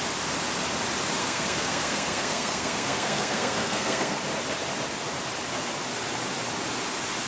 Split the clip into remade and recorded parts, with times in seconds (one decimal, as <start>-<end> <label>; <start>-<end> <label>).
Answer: 0.0-1.2 recorded; 1.2-4.2 remade; 4.2-7.3 recorded